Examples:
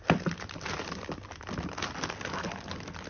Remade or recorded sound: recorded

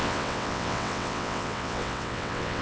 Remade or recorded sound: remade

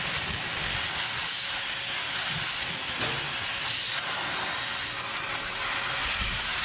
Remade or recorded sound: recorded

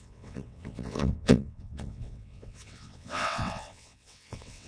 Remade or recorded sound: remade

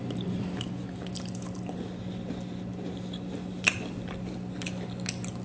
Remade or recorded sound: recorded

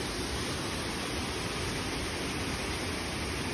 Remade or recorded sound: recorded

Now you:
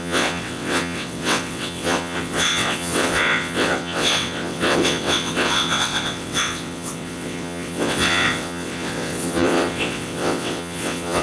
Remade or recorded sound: remade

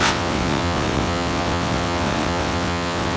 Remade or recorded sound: remade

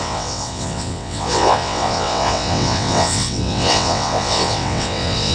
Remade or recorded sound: remade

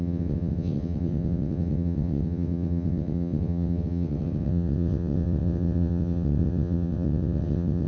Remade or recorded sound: remade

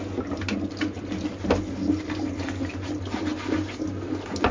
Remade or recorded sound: recorded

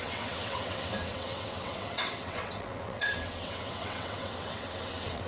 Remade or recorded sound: remade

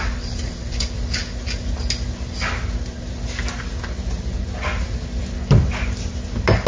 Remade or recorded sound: recorded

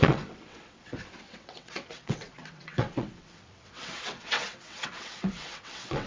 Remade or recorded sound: remade